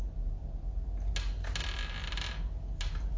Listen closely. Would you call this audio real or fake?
real